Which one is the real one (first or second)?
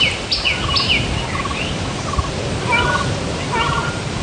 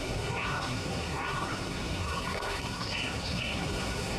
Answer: first